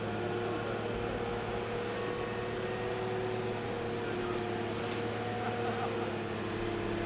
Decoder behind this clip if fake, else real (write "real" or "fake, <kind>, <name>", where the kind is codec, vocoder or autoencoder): real